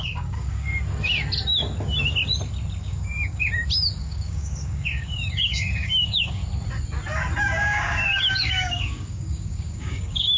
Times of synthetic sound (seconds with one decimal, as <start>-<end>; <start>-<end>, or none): 0.0-0.7; 2.8-3.5; 4.0-6.4; 7.4-10.4